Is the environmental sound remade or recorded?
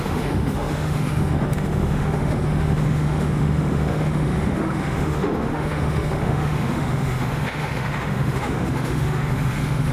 remade